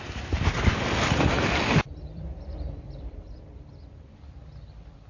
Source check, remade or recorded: remade